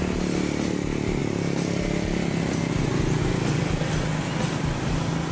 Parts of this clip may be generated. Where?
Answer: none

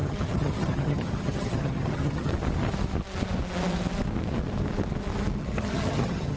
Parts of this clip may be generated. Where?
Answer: 0.0-2.3 (vocoder, HiFi-GAN); 5.4-6.4

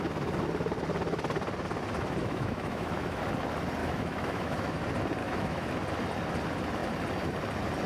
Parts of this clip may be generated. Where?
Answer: 2.2-3.2 (autoencoder, DAC-VAE); 3.8-4.8; 5.2-5.7

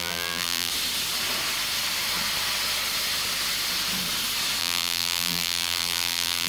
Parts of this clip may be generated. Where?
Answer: 0.0-0.7 (vocoder, BigVGAN v2); 4.6-6.5

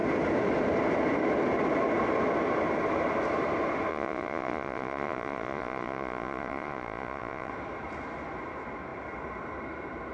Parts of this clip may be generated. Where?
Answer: 3.9-7.5 (vocoder, Vocos)

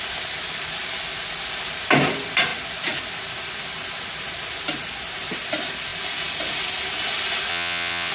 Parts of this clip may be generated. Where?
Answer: 7.5-8.1 (vocoder, WaveNeXt)